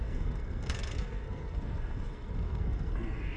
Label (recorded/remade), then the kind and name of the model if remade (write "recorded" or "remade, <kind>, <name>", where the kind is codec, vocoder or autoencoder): remade, codec, SNAC